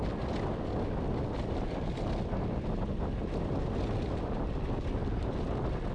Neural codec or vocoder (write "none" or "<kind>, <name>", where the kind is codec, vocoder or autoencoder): none